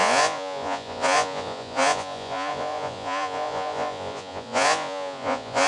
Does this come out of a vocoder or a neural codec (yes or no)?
yes